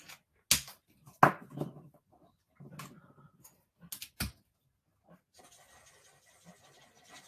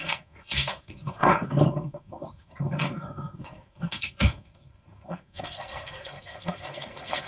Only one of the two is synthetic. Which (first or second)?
second